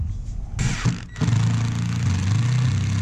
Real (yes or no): yes